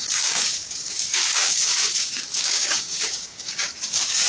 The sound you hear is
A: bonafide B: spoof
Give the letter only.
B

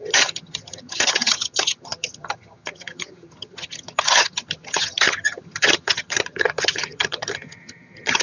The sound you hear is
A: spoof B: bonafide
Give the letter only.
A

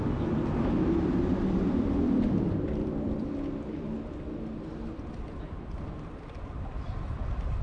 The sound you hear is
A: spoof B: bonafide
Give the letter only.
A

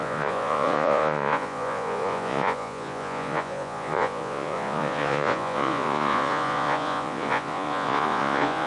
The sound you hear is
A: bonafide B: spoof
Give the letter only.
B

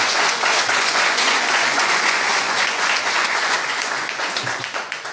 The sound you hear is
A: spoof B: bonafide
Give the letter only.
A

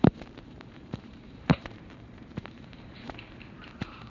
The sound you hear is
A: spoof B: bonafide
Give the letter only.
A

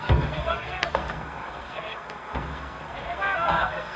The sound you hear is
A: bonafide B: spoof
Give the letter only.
B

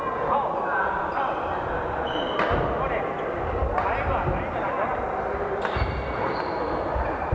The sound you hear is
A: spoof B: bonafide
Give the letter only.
B